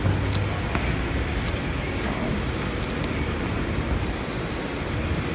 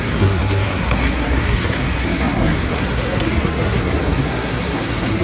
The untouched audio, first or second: first